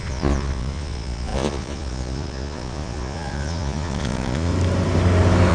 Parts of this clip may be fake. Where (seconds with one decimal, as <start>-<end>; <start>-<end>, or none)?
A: 0.0-4.5